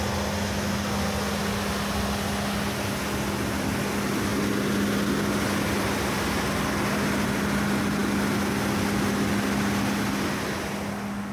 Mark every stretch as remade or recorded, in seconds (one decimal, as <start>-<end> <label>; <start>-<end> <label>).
0.0-11.3 recorded